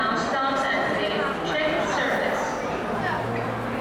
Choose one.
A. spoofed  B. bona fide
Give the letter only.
B